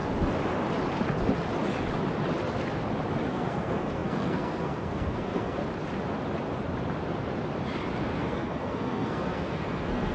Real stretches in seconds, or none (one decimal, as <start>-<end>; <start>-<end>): 0.0-3.3; 5.6-8.2